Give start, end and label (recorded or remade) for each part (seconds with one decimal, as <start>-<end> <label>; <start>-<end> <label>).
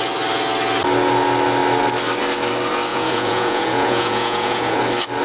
0.0-2.9 recorded; 2.9-4.8 remade; 4.8-5.2 recorded